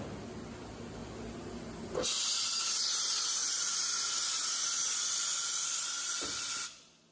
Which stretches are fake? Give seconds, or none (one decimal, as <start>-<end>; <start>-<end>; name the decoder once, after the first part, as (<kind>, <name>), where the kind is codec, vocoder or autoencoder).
none